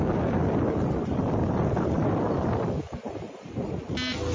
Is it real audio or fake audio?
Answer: real